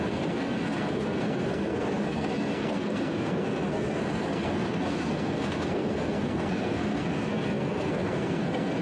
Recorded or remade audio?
remade